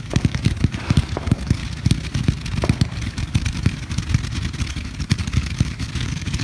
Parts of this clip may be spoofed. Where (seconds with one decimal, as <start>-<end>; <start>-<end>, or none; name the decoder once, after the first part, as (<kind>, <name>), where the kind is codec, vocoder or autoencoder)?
0.0-1.6 (codec, DAC); 3.0-4.0; 4.6-6.4

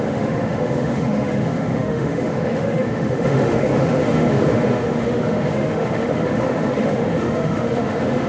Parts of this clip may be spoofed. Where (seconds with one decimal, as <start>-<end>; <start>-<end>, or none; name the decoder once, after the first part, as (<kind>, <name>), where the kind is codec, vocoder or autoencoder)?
0.0-8.3 (autoencoder, DAC-VAE)

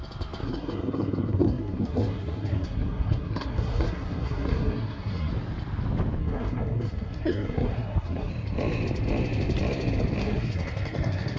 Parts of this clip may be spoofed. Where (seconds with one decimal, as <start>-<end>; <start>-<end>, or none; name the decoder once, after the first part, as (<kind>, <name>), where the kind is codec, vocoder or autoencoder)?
0.4-5.3 (codec, SNAC); 6.2-8.3; 10.2-11.4

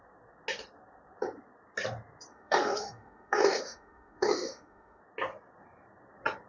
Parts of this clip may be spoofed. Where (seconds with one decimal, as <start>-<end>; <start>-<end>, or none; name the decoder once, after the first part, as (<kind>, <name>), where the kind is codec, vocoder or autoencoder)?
2.3-5.0 (autoencoder, DAC-VAE)

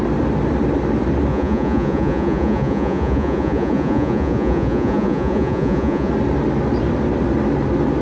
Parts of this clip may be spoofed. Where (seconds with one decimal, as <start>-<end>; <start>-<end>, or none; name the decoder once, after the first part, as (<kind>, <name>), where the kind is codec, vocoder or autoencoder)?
1.3-6.1 (vocoder, Vocos)

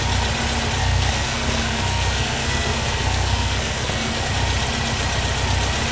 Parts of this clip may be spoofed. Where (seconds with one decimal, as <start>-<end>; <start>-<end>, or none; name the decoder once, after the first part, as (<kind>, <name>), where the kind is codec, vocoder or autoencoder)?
0.8-4.3 (codec, SNAC)